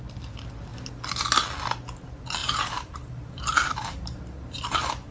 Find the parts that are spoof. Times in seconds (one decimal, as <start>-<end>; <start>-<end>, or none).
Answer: 2.4-5.1